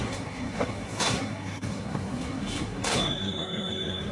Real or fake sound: fake